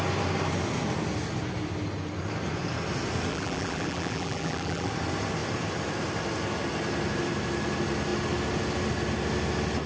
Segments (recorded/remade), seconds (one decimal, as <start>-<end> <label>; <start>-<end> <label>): 0.0-3.3 recorded; 3.3-4.9 remade; 4.9-9.9 recorded